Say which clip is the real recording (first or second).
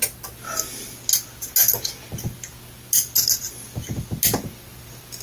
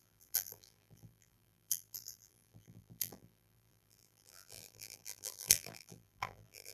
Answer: first